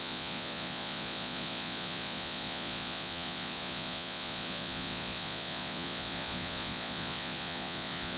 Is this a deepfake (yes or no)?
yes